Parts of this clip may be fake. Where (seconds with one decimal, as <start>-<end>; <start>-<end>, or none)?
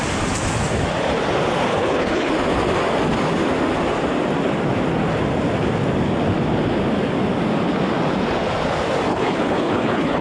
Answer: 1.7-2.3; 9.1-10.2